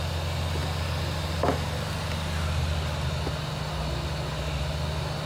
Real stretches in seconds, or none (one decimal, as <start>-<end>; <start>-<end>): 0.0-5.3